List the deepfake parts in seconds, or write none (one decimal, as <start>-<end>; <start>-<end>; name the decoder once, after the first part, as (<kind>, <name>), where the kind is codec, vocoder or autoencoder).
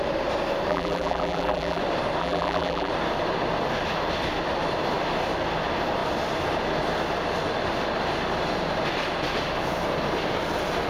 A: 0.7-1.8 (vocoder, BigVGAN v2); 2.2-2.9